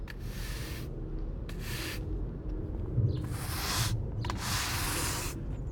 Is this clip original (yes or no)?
yes